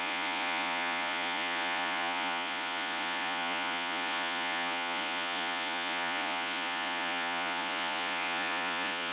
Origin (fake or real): fake